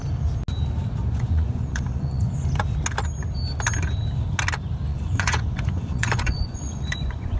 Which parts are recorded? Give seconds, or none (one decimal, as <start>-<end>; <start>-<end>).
0.0-1.0; 2.3-4.9